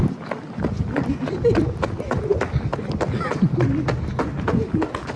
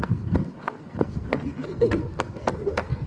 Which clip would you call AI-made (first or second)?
second